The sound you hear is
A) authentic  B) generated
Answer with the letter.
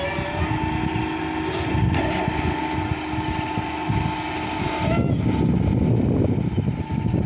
A